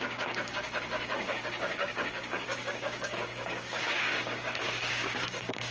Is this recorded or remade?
remade